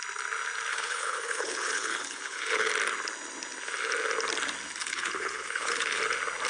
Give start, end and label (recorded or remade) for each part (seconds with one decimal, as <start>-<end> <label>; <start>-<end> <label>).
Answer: 0.0-0.7 recorded; 0.7-2.7 remade; 2.7-4.8 recorded; 4.8-6.0 remade; 6.0-6.5 recorded

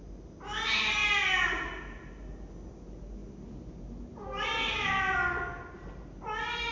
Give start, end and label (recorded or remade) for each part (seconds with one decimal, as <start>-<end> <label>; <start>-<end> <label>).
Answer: 0.0-6.7 recorded

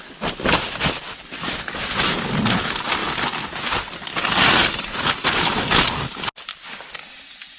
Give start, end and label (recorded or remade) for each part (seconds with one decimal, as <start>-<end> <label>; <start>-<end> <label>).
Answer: 0.0-7.6 recorded

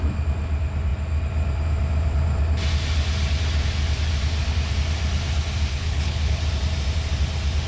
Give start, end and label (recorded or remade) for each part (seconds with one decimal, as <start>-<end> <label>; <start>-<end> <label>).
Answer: 0.0-5.7 recorded; 5.7-6.4 remade; 6.4-7.7 recorded